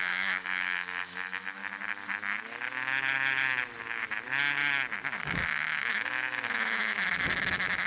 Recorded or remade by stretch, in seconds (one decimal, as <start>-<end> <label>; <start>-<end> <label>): 0.0-1.6 remade; 1.6-5.2 recorded; 5.2-7.9 remade